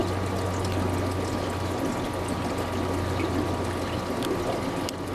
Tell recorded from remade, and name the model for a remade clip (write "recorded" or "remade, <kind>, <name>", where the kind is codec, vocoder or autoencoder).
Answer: recorded